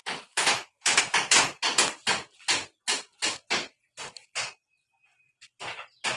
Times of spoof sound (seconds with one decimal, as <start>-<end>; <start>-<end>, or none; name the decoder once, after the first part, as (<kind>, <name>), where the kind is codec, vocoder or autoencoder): 0.0-1.0 (autoencoder, DAC-VAE)